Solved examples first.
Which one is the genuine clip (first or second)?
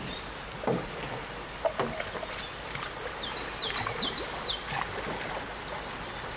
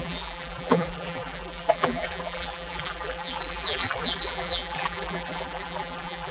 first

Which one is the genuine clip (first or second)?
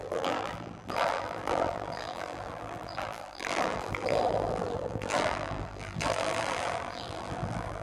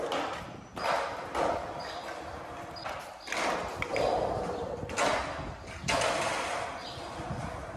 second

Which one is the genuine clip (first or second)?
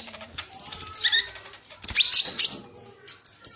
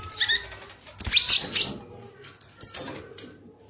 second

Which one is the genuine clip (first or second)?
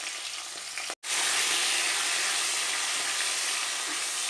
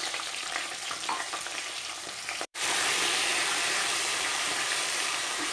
first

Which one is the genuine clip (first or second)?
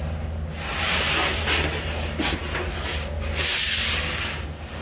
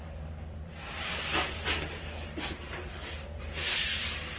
first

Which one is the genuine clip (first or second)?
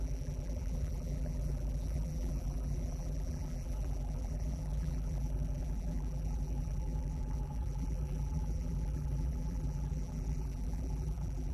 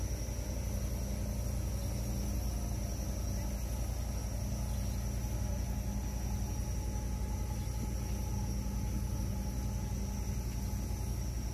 second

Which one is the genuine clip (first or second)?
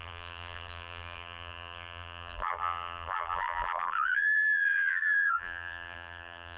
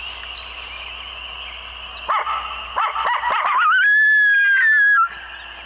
second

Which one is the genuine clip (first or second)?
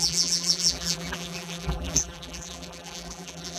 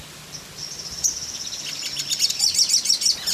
second